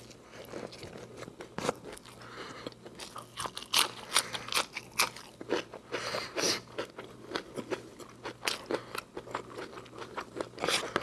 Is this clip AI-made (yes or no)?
no